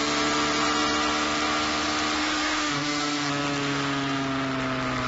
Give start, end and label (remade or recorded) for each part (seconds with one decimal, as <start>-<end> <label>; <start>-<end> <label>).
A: 0.0-2.2 recorded; 2.2-3.3 remade; 3.3-5.1 recorded